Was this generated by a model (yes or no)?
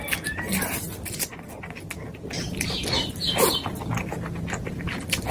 no